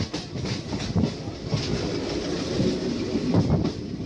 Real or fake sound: real